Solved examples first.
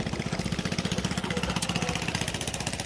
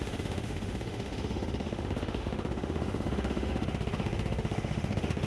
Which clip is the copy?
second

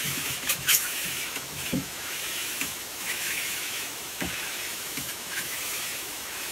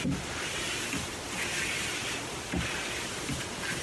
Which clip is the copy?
first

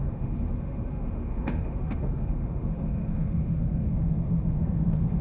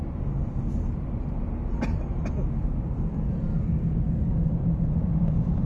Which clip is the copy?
first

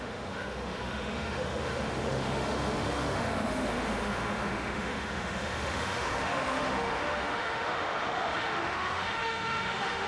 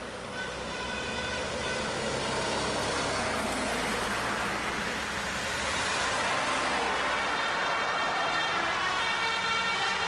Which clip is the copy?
first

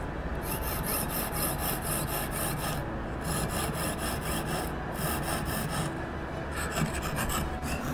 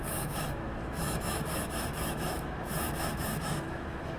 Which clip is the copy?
second